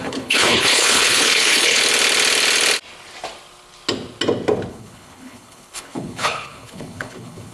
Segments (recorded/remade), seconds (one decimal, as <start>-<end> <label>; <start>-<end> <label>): 0.0-1.8 remade; 1.8-4.7 recorded; 4.7-7.5 remade